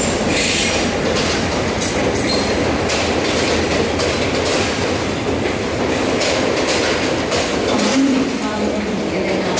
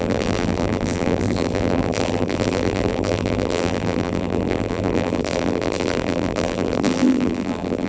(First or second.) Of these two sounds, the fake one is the second